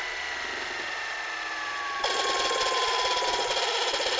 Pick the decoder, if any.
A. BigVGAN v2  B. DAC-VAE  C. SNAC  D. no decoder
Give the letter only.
D